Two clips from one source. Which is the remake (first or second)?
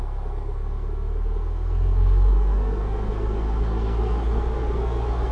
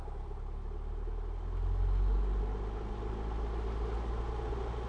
first